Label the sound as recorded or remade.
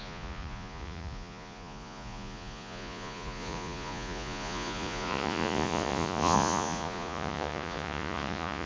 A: remade